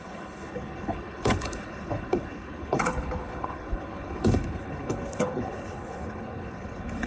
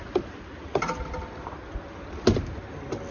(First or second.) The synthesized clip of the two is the first